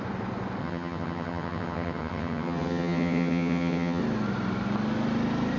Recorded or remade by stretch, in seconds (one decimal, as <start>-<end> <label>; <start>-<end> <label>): 0.0-0.6 recorded; 0.6-4.0 remade; 4.0-5.6 recorded